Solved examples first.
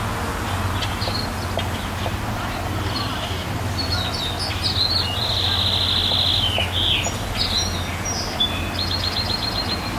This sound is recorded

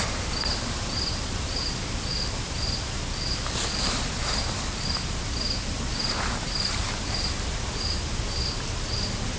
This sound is remade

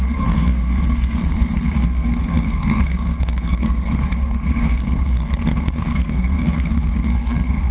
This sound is remade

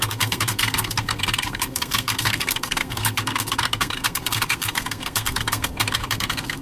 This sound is remade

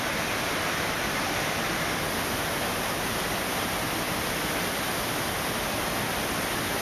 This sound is recorded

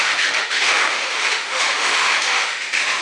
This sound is remade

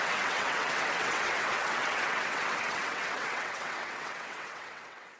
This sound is remade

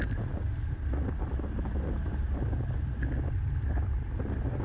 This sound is recorded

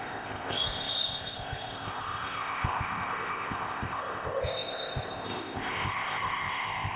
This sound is remade